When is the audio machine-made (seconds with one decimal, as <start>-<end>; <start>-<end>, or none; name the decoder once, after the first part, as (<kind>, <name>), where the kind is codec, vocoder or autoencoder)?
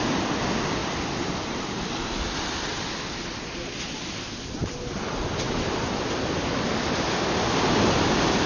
0.8-1.3 (vocoder, BigVGAN v2); 2.7-3.3